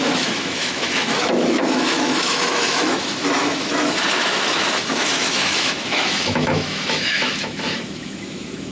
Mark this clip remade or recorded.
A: remade